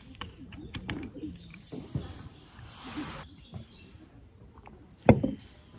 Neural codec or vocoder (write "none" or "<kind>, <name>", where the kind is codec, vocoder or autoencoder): vocoder, BigVGAN v2